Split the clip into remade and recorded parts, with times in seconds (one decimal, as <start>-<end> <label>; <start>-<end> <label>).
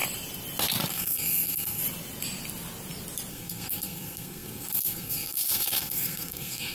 0.0-0.9 recorded; 0.9-1.8 remade; 1.8-3.3 recorded; 3.3-6.7 remade